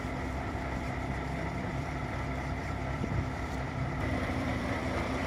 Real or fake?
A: fake